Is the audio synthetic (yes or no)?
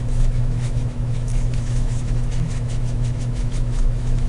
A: yes